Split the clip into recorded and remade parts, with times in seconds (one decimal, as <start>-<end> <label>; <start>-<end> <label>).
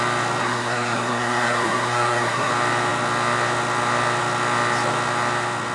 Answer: 0.0-0.4 recorded; 0.4-2.5 remade; 2.5-5.7 recorded